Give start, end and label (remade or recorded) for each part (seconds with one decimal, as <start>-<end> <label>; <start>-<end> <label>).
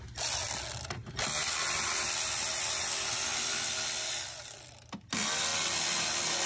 0.0-6.5 recorded